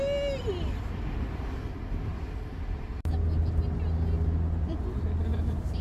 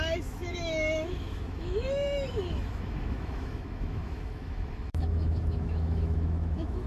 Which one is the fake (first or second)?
second